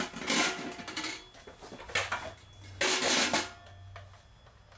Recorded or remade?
recorded